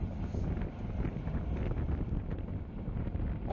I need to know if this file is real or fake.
real